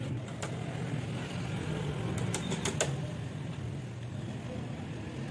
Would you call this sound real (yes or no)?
yes